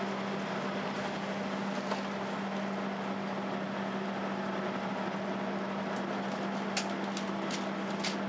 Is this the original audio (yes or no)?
yes